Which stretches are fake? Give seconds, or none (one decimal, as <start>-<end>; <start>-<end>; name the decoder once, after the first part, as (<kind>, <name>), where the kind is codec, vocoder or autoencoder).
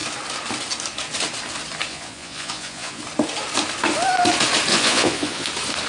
1.9-3.0 (vocoder, Vocos); 4.7-5.5